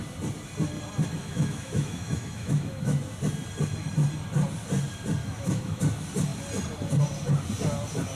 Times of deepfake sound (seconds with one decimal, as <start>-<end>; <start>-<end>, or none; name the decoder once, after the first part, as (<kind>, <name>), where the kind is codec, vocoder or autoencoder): 1.2-3.0 (autoencoder, DAC-VAE); 5.2-5.8